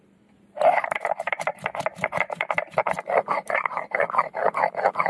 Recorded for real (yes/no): no